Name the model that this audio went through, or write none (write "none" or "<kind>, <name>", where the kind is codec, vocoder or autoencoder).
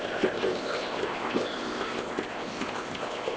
codec, ZipCodec